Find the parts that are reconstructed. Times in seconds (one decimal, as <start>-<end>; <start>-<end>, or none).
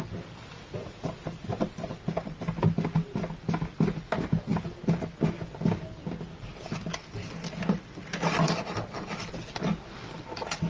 none